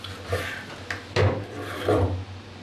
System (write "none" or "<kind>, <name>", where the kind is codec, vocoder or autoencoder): none